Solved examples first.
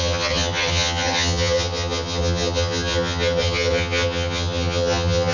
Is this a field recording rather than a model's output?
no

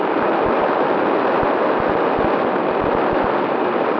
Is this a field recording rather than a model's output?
yes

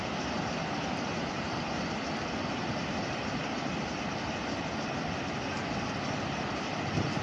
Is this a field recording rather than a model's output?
yes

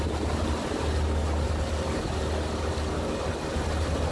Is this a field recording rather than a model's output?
yes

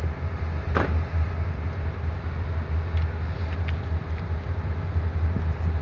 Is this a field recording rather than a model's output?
yes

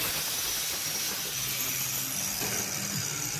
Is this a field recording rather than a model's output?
yes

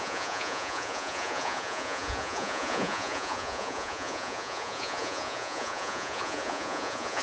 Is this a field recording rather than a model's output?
no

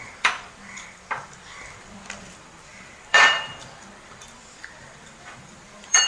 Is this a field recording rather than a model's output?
no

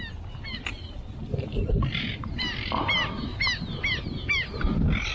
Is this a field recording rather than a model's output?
yes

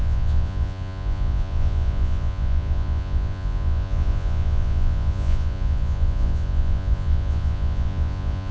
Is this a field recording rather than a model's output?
no